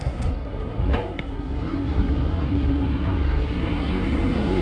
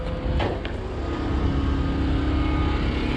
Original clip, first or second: second